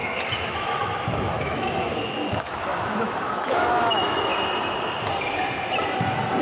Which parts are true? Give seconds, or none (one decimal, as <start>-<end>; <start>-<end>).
4.3-6.4